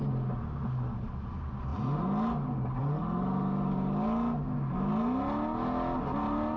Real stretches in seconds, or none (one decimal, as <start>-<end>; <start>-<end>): 0.0-6.6